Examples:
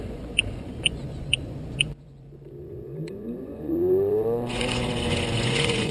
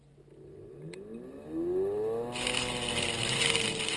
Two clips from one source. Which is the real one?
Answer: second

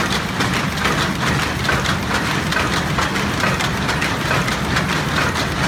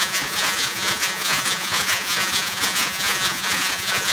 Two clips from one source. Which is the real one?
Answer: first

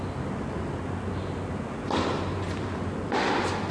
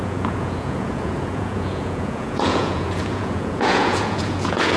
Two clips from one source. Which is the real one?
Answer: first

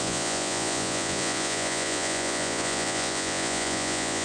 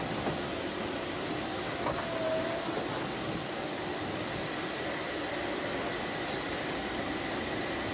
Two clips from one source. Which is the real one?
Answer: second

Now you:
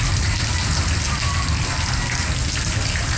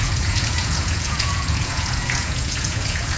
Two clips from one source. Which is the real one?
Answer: first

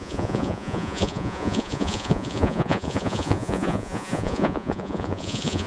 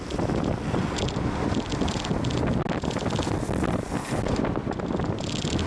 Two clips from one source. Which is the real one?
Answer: second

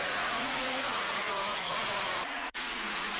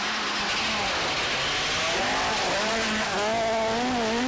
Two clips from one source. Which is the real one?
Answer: second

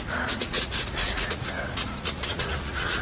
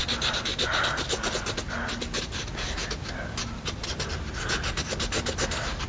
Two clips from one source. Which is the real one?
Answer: second